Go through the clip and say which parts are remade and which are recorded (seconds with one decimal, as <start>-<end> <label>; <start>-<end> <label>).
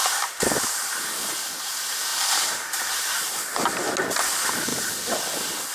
0.0-5.7 recorded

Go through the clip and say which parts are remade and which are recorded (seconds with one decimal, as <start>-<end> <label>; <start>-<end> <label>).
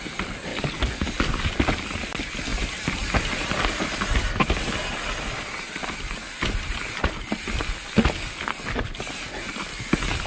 0.0-0.5 recorded; 0.5-1.5 remade; 1.5-10.3 recorded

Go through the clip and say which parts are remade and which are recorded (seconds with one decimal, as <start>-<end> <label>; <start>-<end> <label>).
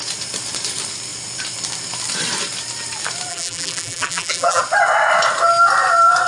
0.0-3.3 recorded; 3.3-4.6 remade; 4.6-6.3 recorded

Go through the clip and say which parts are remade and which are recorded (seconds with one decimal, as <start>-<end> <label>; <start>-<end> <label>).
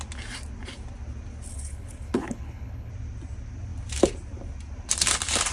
0.0-1.5 recorded; 1.5-2.9 remade; 2.9-5.5 recorded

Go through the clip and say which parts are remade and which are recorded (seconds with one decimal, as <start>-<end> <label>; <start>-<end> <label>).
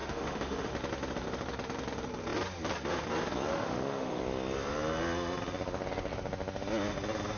0.0-0.7 remade; 0.7-3.5 recorded; 3.5-4.2 remade; 4.2-7.4 recorded